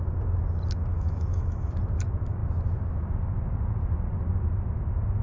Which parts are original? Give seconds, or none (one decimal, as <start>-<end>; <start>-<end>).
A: 0.0-0.9; 1.7-5.2